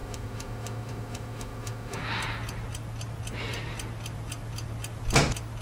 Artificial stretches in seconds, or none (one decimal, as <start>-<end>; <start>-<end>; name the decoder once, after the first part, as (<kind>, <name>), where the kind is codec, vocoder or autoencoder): 0.0-2.0 (autoencoder, DAC-VAE)